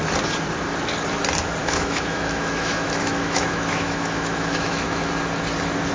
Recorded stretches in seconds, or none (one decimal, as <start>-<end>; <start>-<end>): 0.0-1.6; 5.1-5.9